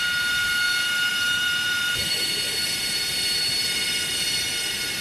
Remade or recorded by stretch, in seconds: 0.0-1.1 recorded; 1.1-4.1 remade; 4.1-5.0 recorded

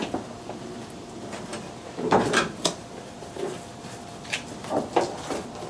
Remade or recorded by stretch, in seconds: 0.0-1.5 recorded; 1.5-4.2 remade; 4.2-5.7 recorded

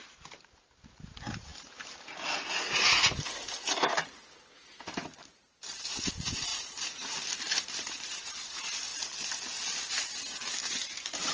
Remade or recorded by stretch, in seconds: 0.0-8.9 remade; 8.9-9.9 recorded; 9.9-11.3 remade

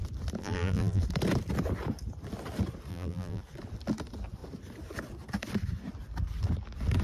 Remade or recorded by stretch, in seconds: 0.0-0.4 recorded; 0.4-1.0 remade; 1.0-2.9 recorded; 2.9-3.4 remade; 3.4-7.0 recorded

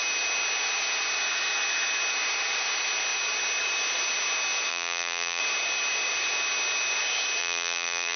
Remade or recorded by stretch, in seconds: 0.0-4.7 recorded; 4.7-5.4 remade; 5.4-7.4 recorded; 7.4-8.2 remade

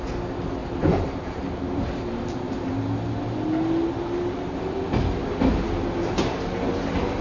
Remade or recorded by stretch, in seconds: 0.0-0.6 recorded; 0.6-2.7 remade; 2.7-7.2 recorded

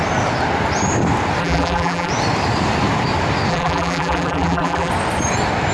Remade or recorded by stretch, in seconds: 0.0-1.4 recorded; 1.4-2.1 remade; 2.1-3.5 recorded; 3.5-4.9 remade; 4.9-5.7 recorded